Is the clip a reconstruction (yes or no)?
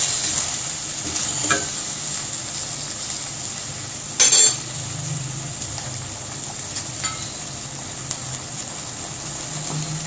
no